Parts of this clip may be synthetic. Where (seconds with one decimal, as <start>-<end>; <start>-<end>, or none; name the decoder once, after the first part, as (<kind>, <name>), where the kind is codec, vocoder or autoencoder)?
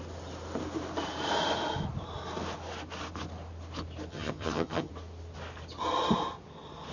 4.1-4.9 (vocoder, HiFi-GAN)